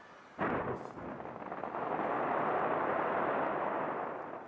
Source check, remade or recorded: recorded